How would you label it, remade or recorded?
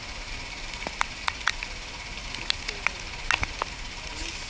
recorded